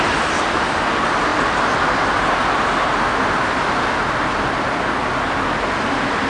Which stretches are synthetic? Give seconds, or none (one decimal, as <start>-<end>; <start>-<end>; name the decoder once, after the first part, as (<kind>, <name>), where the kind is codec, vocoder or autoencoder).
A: none